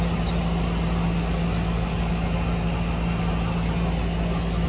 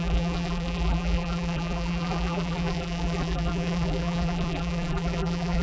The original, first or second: first